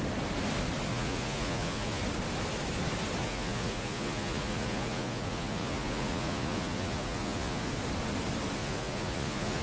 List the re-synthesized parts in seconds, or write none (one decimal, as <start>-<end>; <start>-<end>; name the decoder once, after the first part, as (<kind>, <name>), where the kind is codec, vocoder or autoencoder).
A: 0.9-2.0 (vocoder, Vocos); 3.2-7.7; 8.6-9.6